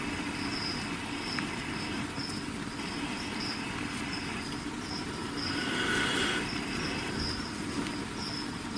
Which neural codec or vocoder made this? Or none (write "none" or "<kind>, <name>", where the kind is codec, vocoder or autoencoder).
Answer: none